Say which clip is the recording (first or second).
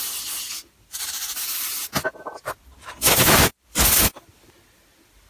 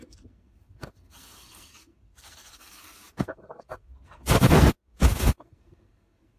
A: first